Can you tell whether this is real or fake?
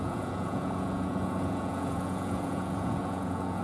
fake